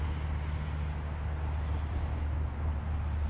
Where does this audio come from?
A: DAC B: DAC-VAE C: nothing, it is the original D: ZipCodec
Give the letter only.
C